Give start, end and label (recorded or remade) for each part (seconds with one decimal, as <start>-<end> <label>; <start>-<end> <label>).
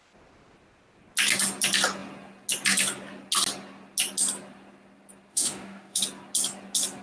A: 0.0-5.3 recorded; 5.3-6.0 remade; 6.0-7.0 recorded